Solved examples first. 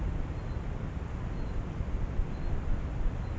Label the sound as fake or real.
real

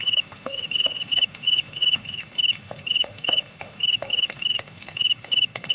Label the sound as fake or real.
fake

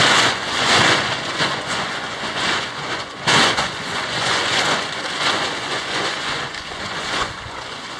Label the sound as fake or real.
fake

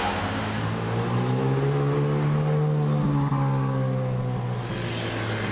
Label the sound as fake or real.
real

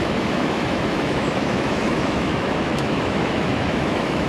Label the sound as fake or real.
fake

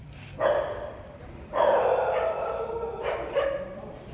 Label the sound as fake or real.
fake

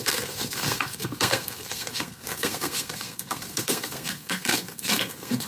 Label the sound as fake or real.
fake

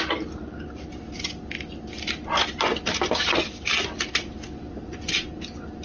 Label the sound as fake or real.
real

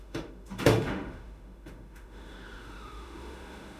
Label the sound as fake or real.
fake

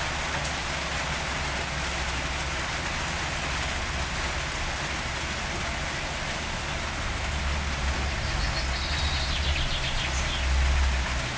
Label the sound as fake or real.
real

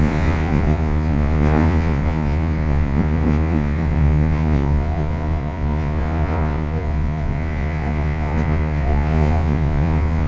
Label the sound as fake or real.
fake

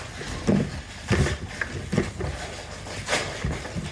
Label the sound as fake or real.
real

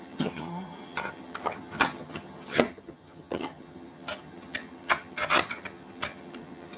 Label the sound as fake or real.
fake